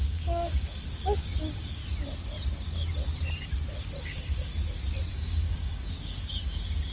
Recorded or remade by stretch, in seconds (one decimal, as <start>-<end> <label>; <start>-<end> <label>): 0.0-1.8 remade; 1.8-4.0 recorded; 4.0-4.5 remade; 4.5-5.1 recorded; 5.1-6.9 remade